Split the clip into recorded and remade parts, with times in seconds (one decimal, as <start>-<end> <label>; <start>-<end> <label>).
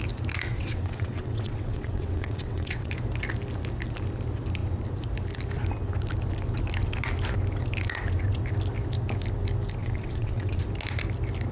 0.0-0.5 recorded; 0.5-2.9 remade; 2.9-9.8 recorded; 9.8-10.6 remade; 10.6-11.5 recorded